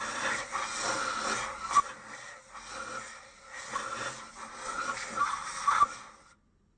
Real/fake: real